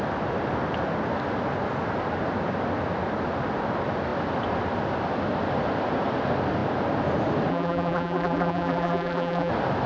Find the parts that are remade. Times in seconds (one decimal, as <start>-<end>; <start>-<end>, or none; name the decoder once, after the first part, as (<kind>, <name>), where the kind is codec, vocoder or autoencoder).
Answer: 7.5-9.5 (vocoder, BigVGAN v2)

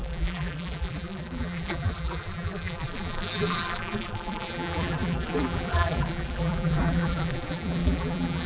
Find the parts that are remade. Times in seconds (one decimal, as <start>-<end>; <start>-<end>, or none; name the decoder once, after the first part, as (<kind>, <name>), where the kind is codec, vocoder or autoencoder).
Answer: 0.0-8.5 (vocoder, BigVGAN v2)

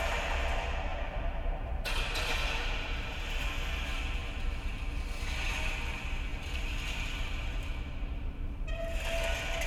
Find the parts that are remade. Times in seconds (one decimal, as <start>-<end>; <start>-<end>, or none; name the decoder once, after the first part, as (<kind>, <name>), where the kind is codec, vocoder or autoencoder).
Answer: 0.9-3.5 (vocoder, BigVGAN v2); 6.3-8.7

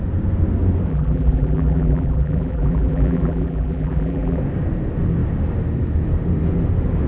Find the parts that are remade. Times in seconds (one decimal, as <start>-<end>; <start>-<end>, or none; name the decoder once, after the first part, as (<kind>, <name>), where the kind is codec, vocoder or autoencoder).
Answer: 0.9-4.4 (vocoder, BigVGAN v2)

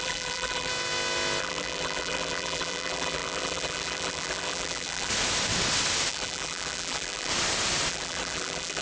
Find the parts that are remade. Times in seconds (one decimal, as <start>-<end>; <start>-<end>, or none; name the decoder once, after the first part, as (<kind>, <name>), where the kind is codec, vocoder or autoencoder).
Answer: 0.0-0.7 (vocoder, BigVGAN v2); 1.4-5.1; 6.1-7.3; 7.9-8.8

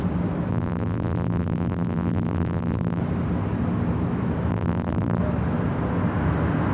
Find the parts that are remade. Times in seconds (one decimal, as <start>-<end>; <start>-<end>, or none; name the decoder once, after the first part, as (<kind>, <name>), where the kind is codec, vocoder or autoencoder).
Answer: 0.5-3.0 (vocoder, BigVGAN v2); 4.5-5.2